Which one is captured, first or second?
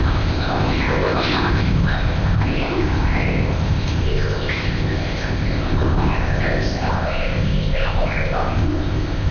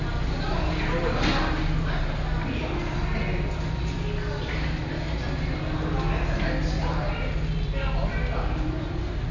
second